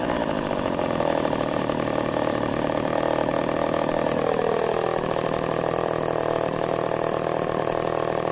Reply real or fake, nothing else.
fake